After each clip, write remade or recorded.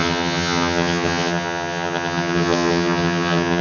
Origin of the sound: remade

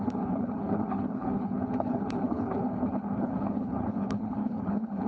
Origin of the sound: remade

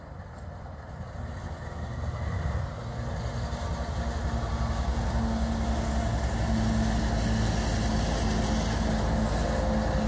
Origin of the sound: recorded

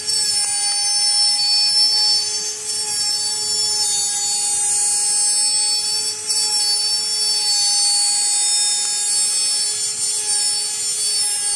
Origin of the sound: recorded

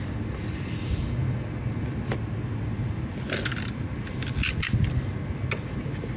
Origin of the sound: recorded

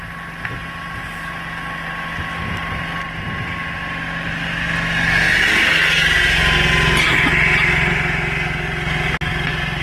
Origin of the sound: recorded